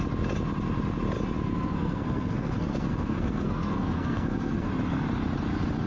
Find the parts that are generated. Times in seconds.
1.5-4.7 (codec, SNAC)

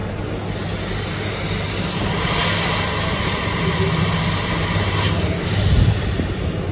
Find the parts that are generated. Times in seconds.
none

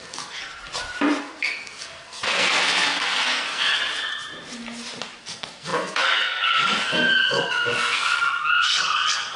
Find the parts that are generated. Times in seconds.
0.0-0.6 (codec, SNAC); 1.2-3.8; 5.2-9.4

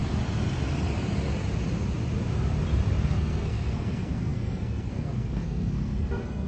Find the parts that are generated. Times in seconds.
3.1-6.5 (codec, SNAC)